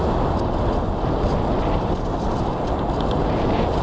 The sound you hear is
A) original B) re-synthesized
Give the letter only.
A